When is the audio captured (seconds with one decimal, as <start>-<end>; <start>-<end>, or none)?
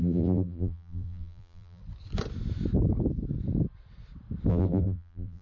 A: 1.8-4.5